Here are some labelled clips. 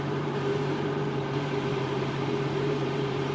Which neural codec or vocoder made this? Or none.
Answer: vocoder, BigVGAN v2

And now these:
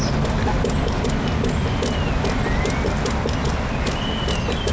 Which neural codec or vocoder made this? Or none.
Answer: none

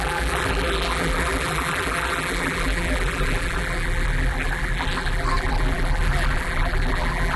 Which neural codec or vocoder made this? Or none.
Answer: vocoder, BigVGAN v2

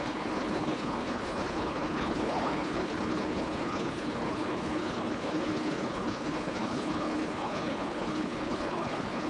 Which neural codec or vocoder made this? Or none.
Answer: codec, HILCodec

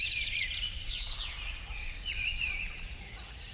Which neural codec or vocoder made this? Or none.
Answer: vocoder, Vocos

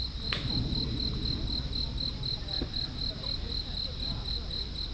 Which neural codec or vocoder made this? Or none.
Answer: none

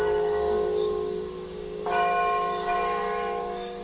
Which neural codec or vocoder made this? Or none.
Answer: codec, DAC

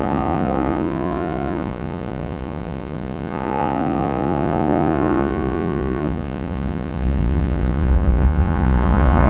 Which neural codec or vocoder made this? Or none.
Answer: vocoder, Vocos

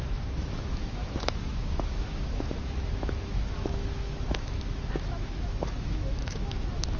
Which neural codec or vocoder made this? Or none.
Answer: autoencoder, DAC-VAE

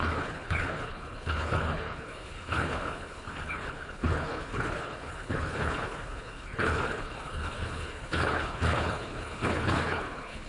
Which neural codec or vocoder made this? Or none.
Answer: codec, HILCodec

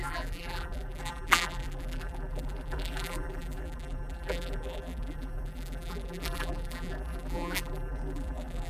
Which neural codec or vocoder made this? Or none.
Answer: vocoder, BigVGAN v2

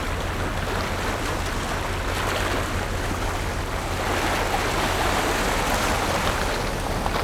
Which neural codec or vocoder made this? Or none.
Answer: none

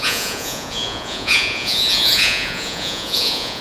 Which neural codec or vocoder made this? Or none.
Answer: vocoder, Vocos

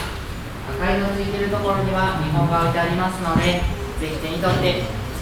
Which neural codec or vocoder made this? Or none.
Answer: none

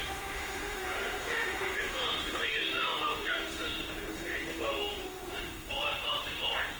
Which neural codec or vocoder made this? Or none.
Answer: autoencoder, DAC-VAE